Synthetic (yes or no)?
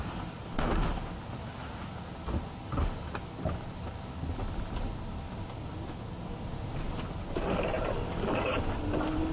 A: no